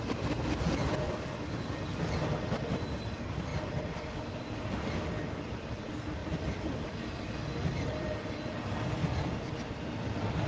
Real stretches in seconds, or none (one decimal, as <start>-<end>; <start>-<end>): 0.0-6.2; 7.6-10.5